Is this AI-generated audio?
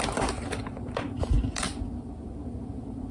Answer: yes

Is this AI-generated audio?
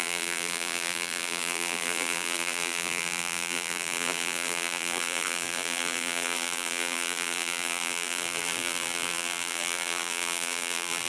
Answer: yes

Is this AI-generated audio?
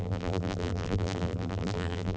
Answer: yes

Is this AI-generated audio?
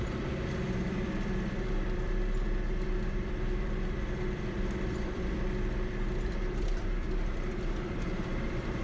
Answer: yes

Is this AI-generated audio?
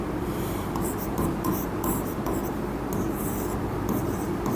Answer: yes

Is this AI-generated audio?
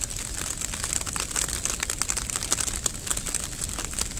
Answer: no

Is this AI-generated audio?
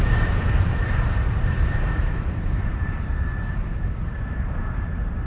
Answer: yes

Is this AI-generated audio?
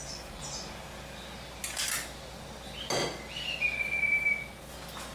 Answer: no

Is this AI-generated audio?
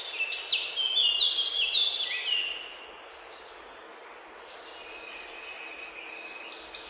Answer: no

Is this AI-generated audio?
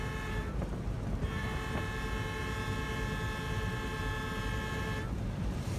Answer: no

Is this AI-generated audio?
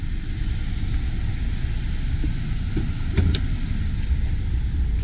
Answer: no